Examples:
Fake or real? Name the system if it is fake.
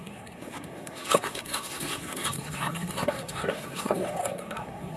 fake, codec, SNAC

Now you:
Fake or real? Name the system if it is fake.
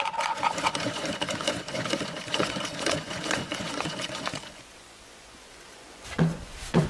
fake, vocoder, Vocos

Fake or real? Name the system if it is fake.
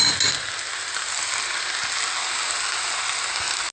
real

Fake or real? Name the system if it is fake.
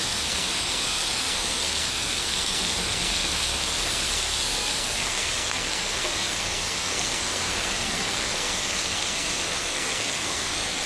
fake, codec, SNAC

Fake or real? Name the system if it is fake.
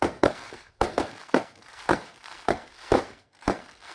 fake, codec, SNAC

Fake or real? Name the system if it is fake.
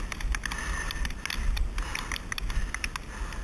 real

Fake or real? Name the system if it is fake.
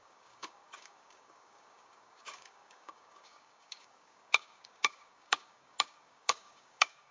fake, codec, DAC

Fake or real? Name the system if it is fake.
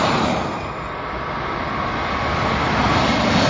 real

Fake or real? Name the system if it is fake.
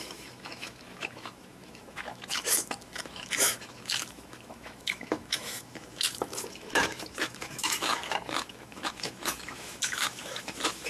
fake, autoencoder, DAC-VAE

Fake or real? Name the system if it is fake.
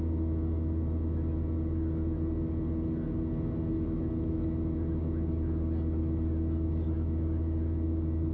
real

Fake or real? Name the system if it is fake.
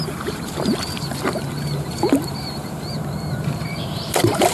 fake, vocoder, BigVGAN v2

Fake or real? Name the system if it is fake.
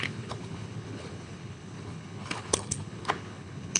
fake, codec, HILCodec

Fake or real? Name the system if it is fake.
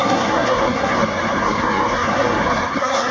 fake, codec, SNAC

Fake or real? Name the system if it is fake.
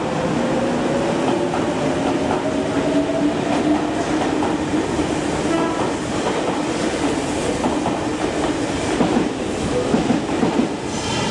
real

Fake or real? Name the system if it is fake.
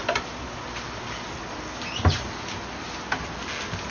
real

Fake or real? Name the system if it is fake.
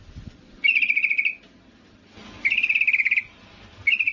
real